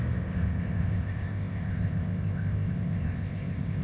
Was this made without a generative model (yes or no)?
no